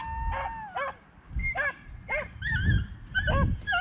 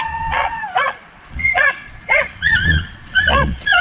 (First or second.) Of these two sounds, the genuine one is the first